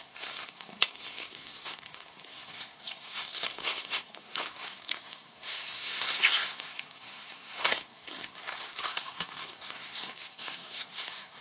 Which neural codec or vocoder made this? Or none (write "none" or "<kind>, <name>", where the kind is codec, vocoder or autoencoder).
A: codec, SNAC